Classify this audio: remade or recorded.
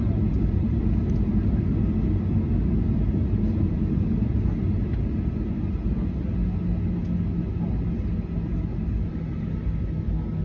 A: recorded